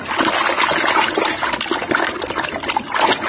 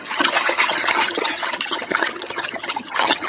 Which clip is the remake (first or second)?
second